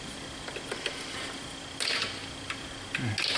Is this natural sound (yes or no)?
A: yes